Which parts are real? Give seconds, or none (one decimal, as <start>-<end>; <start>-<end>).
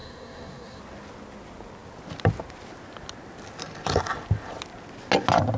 0.8-5.6